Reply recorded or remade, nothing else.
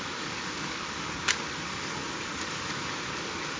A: remade